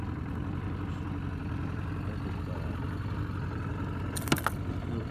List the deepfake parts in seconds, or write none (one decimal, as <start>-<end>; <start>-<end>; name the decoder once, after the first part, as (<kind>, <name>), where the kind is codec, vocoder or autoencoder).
none